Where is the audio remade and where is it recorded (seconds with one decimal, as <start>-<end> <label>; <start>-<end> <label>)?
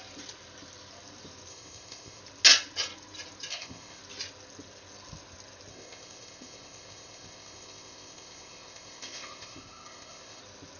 0.0-1.5 recorded; 1.5-2.2 remade; 2.2-3.5 recorded; 3.5-4.0 remade; 4.0-5.7 recorded; 5.7-10.4 remade; 10.4-10.8 recorded